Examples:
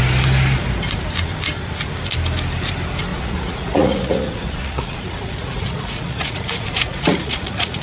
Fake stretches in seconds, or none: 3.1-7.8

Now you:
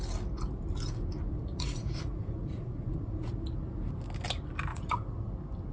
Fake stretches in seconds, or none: 1.3-3.3; 4.7-5.3

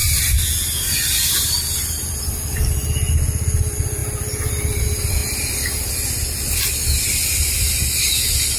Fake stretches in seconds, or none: none